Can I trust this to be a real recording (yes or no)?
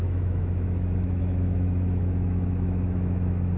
no